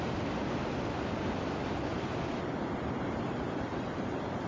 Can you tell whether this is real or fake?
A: real